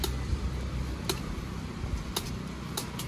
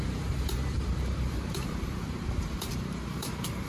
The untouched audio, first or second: first